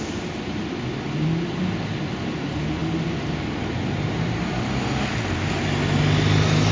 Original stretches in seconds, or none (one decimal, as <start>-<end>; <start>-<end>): 0.0-6.7